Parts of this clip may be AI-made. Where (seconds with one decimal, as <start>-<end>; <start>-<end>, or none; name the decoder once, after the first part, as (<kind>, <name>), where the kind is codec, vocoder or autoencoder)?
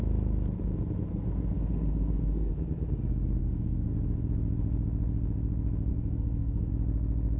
1.1-2.5 (codec, SNAC); 3.4-3.9; 5.9-6.7